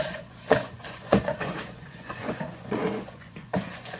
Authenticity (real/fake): fake